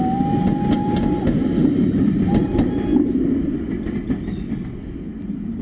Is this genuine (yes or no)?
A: yes